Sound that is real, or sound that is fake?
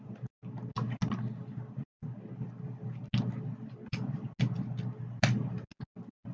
real